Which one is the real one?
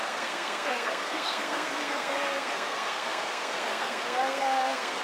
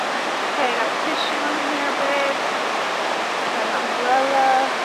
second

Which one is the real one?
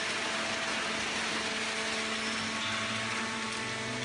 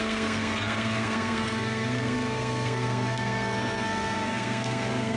first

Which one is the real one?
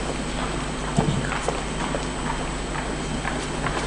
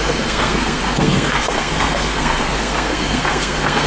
first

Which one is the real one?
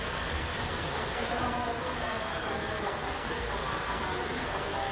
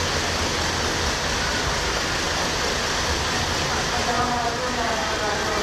second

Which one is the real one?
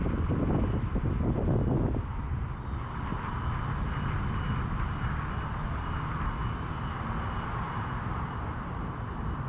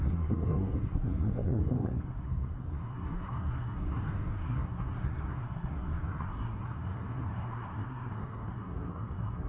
first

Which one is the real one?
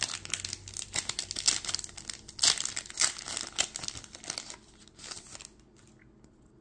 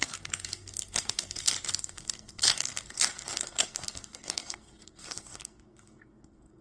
first